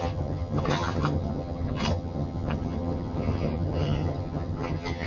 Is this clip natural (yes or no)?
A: no